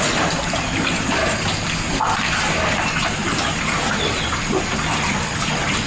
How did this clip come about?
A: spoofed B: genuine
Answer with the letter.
B